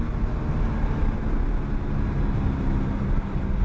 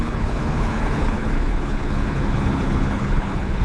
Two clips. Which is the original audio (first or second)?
first